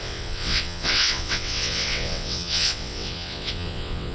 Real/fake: fake